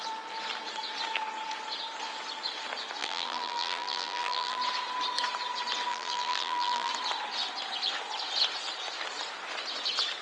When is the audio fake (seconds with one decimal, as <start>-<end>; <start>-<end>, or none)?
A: 3.0-4.6; 5.9-6.9